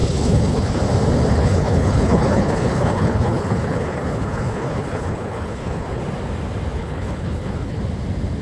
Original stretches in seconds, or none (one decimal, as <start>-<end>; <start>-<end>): 0.8-1.3; 6.0-6.8; 7.8-8.4